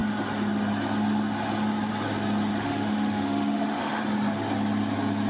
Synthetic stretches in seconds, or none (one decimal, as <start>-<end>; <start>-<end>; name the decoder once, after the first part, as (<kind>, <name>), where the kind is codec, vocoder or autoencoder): 2.5-4.0 (autoencoder, DAC-VAE)